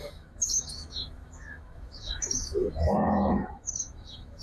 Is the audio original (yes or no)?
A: no